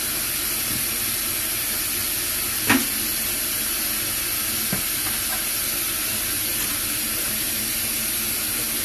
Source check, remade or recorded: recorded